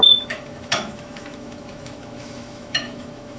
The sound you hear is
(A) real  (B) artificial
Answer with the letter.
B